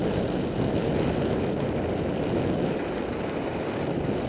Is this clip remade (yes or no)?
no